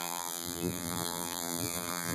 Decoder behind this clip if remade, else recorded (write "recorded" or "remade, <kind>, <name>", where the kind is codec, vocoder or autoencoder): remade, vocoder, BigVGAN v2